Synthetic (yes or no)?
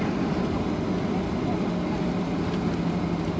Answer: no